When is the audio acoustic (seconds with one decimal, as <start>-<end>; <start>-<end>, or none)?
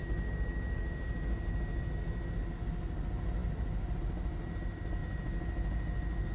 0.0-6.3